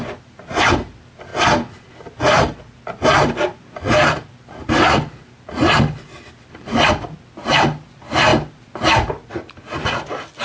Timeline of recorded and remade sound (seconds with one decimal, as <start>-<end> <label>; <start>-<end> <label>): 0.0-10.4 recorded